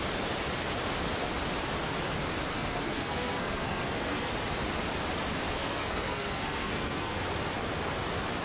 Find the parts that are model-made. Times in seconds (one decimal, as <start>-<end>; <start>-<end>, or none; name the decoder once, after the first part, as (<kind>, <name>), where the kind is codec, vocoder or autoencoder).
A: 2.5-4.3 (codec, SNAC); 5.6-7.2